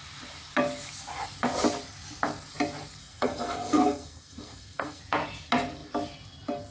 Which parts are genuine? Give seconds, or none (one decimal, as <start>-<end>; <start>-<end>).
0.0-3.0; 5.0-6.7